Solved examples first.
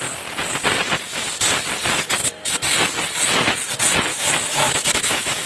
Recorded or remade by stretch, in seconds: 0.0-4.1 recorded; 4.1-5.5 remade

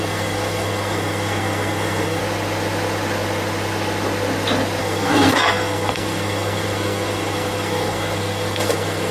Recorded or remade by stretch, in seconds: 0.0-2.2 remade; 2.2-4.8 recorded; 4.8-9.1 remade

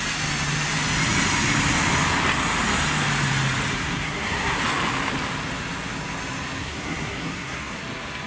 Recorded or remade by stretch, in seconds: 0.0-3.7 recorded; 3.7-4.6 remade; 4.6-6.6 recorded; 6.6-7.8 remade; 7.8-8.3 recorded

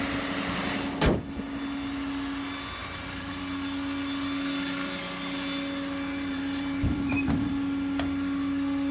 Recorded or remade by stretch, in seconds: 0.0-2.8 recorded; 2.8-3.4 remade; 3.4-6.3 recorded; 6.3-7.5 remade; 7.5-8.9 recorded

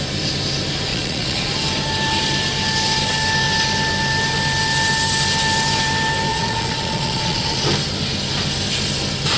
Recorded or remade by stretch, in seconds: 0.0-0.9 recorded; 0.9-1.5 remade; 1.5-6.3 recorded; 6.3-7.6 remade; 7.6-9.4 recorded